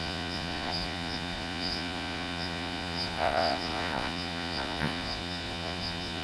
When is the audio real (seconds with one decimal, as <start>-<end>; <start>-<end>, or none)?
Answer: none